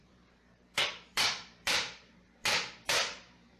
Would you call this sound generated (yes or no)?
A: yes